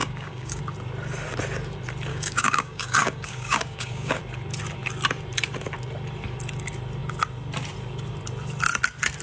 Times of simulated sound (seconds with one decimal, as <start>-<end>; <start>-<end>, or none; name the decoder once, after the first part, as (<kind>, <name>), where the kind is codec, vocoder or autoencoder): 0.0-0.6 (codec, DAC); 2.1-4.2